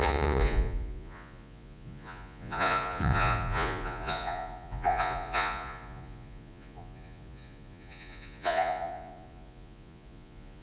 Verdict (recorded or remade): remade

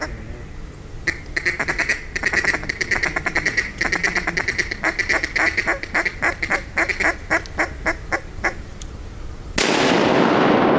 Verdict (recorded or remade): recorded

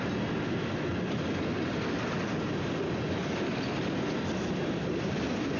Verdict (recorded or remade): recorded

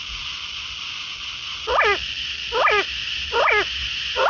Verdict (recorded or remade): recorded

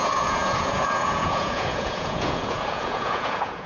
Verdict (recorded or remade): remade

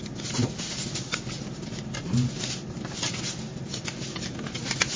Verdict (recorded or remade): recorded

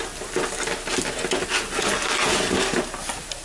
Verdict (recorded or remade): recorded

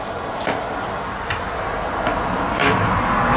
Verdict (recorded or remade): recorded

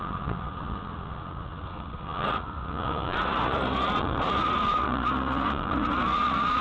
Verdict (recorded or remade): remade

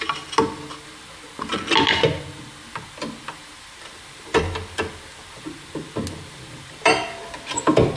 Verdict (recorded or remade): recorded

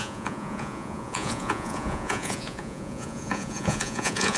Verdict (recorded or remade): remade